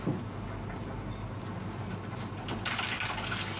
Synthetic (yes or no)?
no